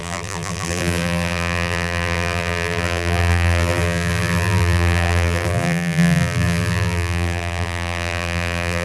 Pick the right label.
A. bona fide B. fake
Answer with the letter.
B